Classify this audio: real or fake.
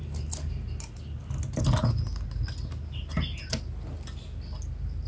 real